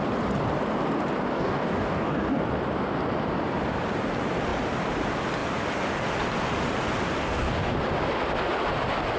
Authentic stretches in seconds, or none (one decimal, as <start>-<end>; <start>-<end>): 0.0-1.3; 2.4-7.2; 7.7-9.2